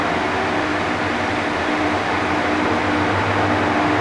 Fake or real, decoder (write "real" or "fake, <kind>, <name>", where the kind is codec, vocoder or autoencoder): real